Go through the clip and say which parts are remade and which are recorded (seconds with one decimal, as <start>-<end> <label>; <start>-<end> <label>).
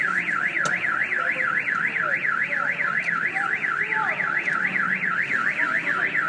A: 0.0-6.3 recorded